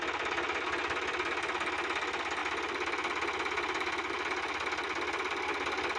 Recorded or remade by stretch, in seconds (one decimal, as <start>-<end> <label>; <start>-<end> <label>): 0.0-6.0 recorded